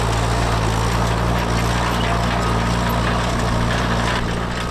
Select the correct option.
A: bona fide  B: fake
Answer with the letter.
A